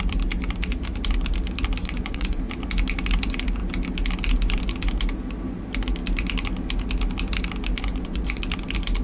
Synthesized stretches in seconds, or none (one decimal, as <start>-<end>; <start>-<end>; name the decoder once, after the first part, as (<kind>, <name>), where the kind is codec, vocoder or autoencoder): 1.8-2.4 (vocoder, Vocos); 7.9-8.4